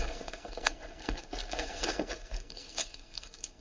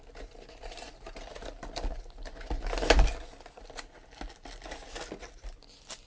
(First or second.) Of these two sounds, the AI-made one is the first